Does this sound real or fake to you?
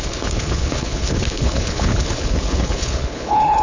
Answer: fake